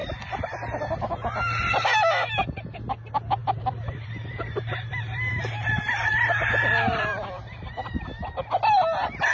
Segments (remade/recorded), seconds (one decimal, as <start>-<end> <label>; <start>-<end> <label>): 0.0-0.8 remade; 0.8-3.4 recorded; 3.4-6.1 remade; 6.1-9.3 recorded